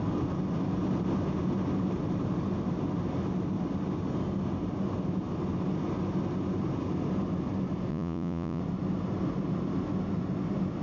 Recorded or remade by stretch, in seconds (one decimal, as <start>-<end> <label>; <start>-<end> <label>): 0.0-7.9 recorded; 7.9-8.6 remade; 8.6-10.8 recorded

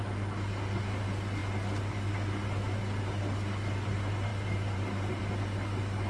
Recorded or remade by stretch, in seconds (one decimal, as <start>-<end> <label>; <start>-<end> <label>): 0.0-4.3 recorded; 4.3-5.2 remade; 5.2-6.1 recorded

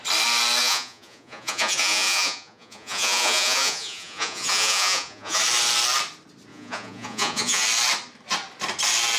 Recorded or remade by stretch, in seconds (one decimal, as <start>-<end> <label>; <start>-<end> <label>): 0.0-0.6 recorded; 0.6-5.4 remade; 5.4-6.5 recorded; 6.5-7.6 remade; 7.6-9.2 recorded

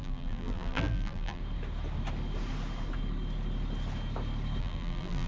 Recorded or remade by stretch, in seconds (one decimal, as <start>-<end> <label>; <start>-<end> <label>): 0.0-1.4 remade; 1.4-4.6 recorded; 4.6-5.3 remade